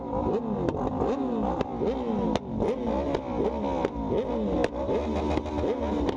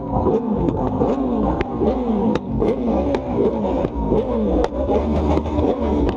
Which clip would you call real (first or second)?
first